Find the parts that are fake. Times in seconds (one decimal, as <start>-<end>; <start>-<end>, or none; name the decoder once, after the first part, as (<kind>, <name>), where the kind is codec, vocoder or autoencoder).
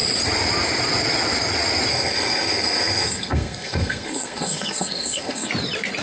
1.9-5.5 (codec, SNAC)